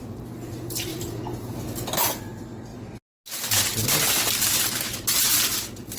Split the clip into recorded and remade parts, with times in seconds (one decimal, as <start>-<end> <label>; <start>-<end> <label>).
0.0-0.9 recorded; 0.9-2.0 remade; 2.0-6.0 recorded